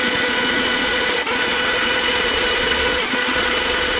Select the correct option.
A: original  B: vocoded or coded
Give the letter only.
B